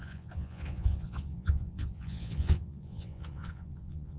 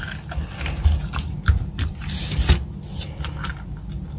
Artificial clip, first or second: first